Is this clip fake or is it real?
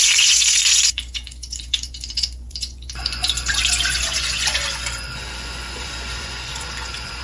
fake